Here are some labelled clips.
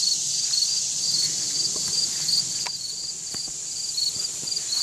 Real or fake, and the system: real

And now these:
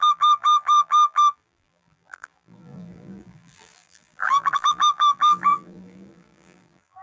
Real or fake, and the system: fake, vocoder, BigVGAN v2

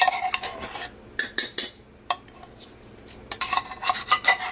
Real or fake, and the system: fake, vocoder, BigVGAN v2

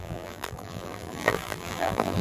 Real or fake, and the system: fake, vocoder, BigVGAN v2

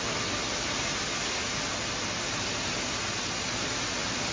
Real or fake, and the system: real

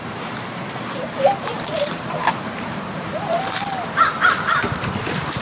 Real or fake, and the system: fake, vocoder, BigVGAN v2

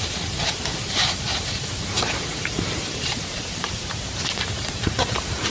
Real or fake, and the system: fake, vocoder, BigVGAN v2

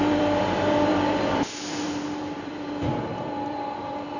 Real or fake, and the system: fake, vocoder, BigVGAN v2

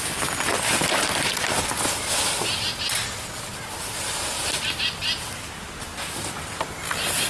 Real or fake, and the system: real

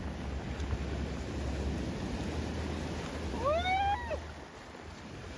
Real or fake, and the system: real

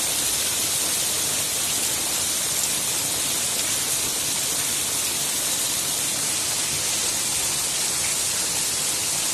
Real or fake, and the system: real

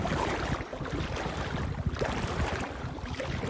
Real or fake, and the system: real